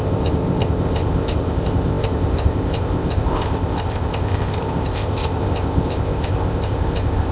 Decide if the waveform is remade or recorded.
remade